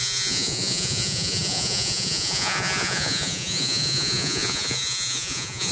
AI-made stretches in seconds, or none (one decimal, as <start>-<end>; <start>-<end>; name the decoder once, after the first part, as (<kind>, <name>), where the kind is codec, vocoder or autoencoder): 0.0-5.7 (vocoder, Vocos)